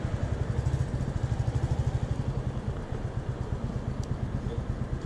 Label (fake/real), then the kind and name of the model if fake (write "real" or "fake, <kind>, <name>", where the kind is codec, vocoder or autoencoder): real